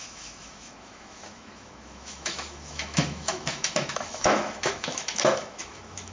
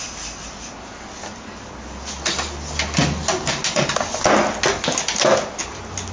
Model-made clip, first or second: first